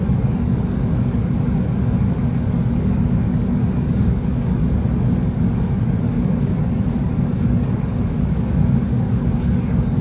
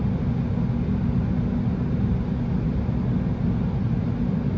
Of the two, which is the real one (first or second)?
second